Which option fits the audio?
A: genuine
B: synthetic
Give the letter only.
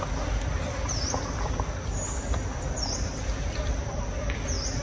A